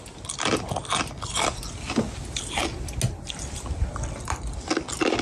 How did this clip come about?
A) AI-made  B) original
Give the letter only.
B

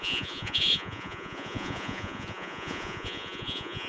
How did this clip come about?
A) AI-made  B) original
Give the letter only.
A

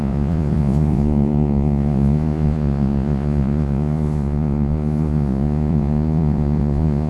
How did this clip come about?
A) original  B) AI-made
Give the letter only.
B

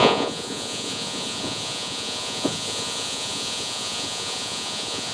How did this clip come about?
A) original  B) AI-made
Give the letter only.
B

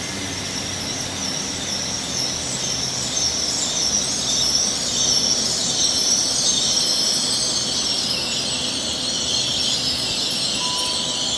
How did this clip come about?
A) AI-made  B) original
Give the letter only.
B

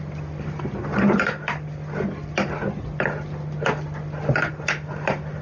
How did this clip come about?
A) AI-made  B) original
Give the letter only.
B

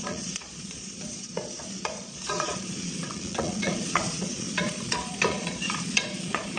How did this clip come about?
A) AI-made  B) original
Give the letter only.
A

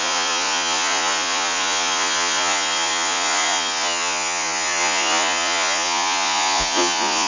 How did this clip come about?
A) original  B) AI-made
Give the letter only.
B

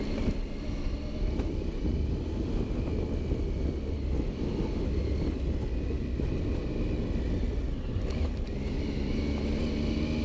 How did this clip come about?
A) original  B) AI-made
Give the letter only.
A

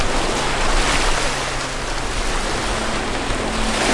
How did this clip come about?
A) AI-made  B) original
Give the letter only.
B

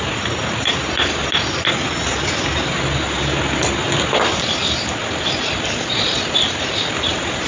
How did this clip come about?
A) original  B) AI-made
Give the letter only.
A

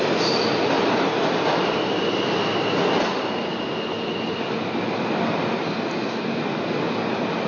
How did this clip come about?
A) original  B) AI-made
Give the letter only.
A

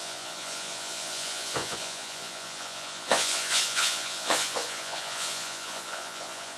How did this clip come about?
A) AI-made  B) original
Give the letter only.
A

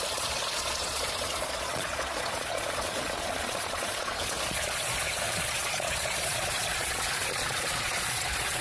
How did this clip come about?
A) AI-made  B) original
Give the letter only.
A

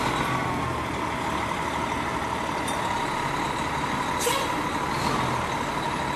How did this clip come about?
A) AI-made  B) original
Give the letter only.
B